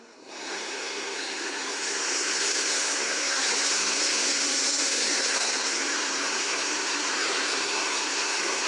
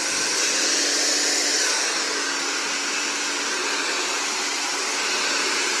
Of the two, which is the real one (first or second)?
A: second